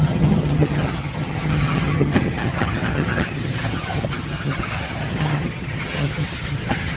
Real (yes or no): no